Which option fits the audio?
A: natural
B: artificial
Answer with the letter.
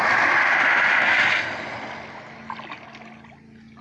A